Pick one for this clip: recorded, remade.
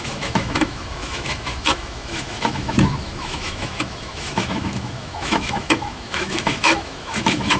remade